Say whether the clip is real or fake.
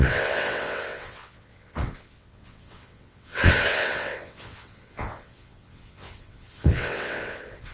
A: fake